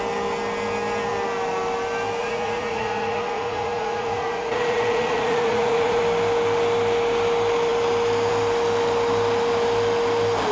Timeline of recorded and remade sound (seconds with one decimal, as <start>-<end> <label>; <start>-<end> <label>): 0.0-2.2 recorded; 2.2-6.0 remade; 6.0-10.5 recorded